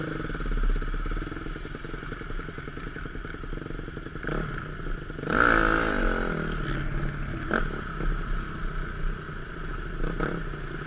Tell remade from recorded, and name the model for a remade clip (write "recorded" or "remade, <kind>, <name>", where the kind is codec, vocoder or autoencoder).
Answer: recorded